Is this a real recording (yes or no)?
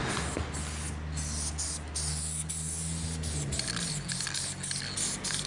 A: yes